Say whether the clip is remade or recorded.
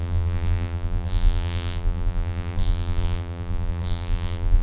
remade